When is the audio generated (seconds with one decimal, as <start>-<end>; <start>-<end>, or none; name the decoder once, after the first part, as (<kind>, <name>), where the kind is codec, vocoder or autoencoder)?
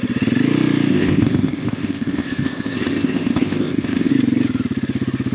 0.9-4.1 (codec, ZipCodec)